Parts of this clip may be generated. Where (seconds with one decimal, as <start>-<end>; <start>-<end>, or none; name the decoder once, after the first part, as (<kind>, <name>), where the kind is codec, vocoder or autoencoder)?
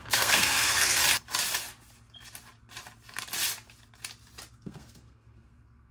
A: 0.0-1.0 (codec, SNAC); 4.5-5.9